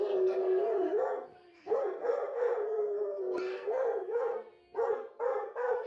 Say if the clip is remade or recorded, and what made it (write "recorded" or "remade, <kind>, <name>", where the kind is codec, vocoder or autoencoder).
remade, codec, SNAC